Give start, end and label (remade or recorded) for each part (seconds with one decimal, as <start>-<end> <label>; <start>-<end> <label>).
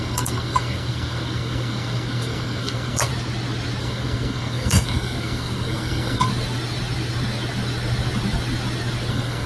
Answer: 0.0-3.1 remade; 3.1-3.8 recorded; 3.8-6.3 remade; 6.3-9.1 recorded; 9.1-9.5 remade